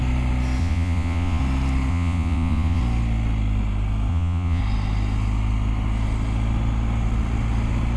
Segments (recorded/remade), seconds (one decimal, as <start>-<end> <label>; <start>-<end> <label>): 0.0-0.6 recorded; 0.6-1.4 remade; 1.4-1.9 recorded; 1.9-2.8 remade; 2.8-4.1 recorded; 4.1-4.6 remade; 4.6-8.0 recorded

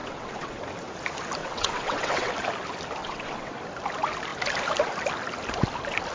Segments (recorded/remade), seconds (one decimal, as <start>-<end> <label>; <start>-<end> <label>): 0.0-0.6 remade; 0.6-1.4 recorded; 1.4-2.3 remade; 2.3-3.0 recorded; 3.0-3.5 remade; 3.5-6.1 recorded

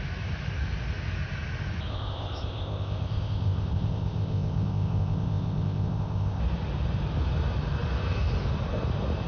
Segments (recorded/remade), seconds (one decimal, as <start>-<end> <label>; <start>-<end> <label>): 0.0-1.9 recorded; 1.9-6.4 remade; 6.4-9.3 recorded

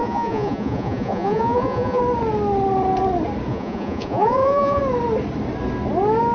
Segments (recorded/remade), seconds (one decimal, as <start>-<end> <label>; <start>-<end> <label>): 0.0-2.0 remade; 2.0-3.5 recorded; 3.5-4.8 remade; 4.8-6.3 recorded

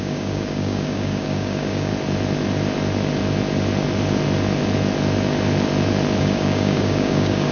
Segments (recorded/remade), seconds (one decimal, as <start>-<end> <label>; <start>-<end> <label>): 0.0-1.9 remade; 1.9-6.2 recorded; 6.2-7.5 remade

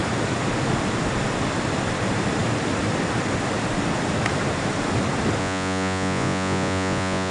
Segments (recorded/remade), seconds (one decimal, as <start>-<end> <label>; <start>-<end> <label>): 0.0-5.4 recorded; 5.4-7.3 remade

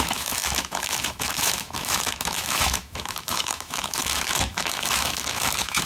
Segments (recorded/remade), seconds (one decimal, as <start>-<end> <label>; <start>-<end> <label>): 0.0-5.9 remade

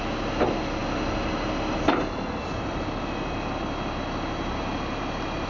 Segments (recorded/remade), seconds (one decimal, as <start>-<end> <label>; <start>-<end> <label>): 0.0-5.5 recorded